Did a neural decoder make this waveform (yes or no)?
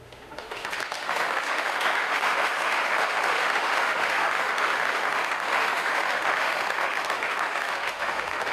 yes